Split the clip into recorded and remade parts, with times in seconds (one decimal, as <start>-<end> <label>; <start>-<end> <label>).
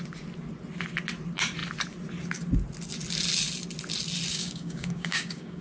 0.0-4.3 recorded; 4.3-5.6 remade